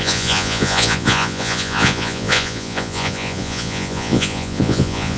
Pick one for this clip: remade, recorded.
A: remade